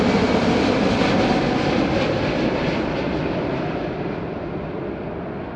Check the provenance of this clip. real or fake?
real